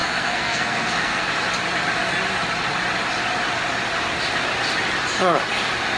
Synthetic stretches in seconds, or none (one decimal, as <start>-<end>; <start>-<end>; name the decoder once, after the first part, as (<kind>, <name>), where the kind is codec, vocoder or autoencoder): 0.0-1.3 (codec, SNAC)